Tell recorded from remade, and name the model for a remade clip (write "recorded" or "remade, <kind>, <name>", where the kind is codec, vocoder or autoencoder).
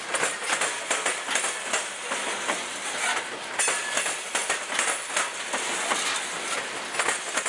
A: recorded